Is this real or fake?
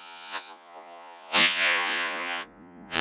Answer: fake